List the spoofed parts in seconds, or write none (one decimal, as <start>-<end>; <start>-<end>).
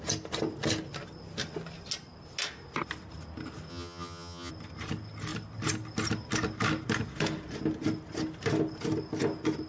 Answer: 3.7-4.5